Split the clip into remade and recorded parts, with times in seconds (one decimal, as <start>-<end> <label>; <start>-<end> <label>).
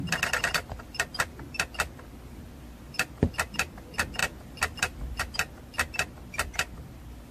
0.0-7.3 recorded